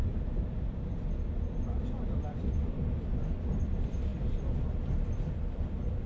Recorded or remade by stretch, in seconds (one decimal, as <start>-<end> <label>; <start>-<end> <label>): 0.0-6.1 remade